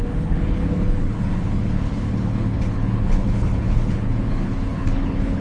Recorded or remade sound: remade